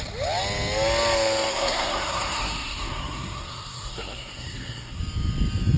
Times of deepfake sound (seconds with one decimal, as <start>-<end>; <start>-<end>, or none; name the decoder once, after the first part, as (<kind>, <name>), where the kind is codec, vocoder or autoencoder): 1.5-5.0 (codec, SNAC)